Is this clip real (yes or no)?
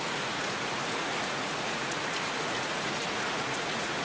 no